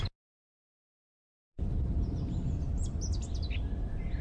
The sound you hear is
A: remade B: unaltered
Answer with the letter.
B